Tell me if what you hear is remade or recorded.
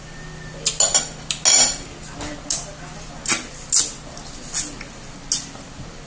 recorded